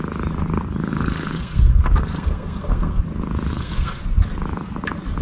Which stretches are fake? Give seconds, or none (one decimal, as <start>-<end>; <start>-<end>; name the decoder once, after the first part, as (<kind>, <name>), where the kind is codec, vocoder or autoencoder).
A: 0.9-3.0 (codec, SNAC); 3.5-4.0